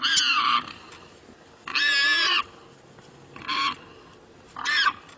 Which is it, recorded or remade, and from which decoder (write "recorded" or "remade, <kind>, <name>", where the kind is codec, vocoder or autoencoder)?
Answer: recorded